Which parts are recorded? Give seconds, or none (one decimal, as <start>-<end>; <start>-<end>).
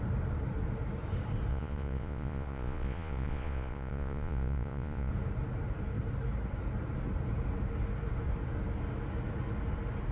0.0-1.5; 5.1-10.1